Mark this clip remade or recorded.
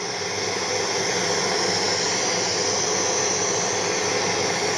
recorded